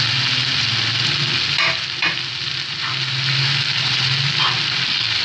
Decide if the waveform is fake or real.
real